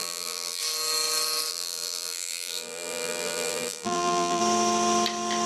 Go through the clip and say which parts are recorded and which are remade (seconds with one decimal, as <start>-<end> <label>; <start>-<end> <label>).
0.0-0.6 remade; 0.6-1.5 recorded; 1.5-4.4 remade; 4.4-5.5 recorded